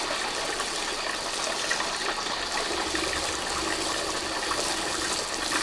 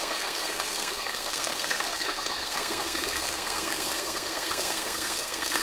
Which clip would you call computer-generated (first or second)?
second